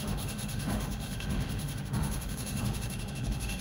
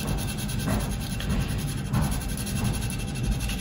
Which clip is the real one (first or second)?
second